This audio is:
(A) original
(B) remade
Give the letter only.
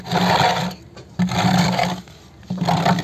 A